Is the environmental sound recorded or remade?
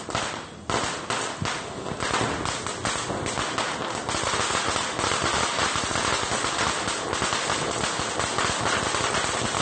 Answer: recorded